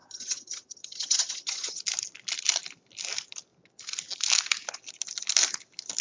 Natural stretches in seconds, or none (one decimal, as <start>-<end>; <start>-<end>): 1.8-6.0